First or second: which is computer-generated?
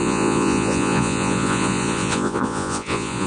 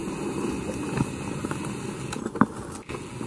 first